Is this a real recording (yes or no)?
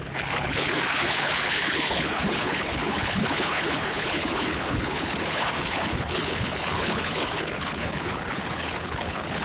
no